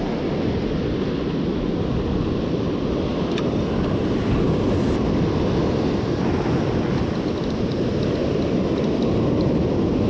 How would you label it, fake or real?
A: real